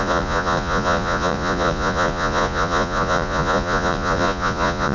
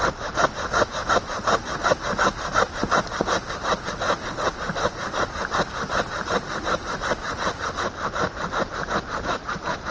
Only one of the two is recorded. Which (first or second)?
second